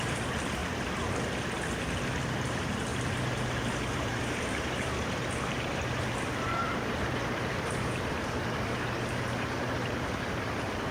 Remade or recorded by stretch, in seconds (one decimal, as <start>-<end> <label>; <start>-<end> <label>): 0.0-0.6 remade; 0.6-1.8 recorded; 1.8-10.9 remade